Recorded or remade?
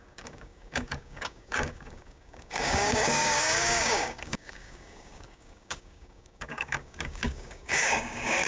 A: remade